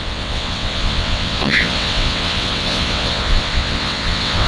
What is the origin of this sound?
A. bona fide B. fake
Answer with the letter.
B